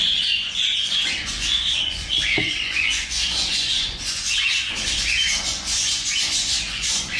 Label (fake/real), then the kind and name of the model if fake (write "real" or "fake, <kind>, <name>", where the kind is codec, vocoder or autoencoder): fake, vocoder, Vocos